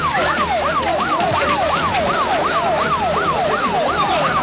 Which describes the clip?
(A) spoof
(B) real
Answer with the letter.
B